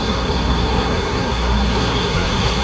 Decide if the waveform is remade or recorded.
remade